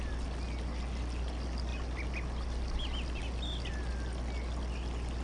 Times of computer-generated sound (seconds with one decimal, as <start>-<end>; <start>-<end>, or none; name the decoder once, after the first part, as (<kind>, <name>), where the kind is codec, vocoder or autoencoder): none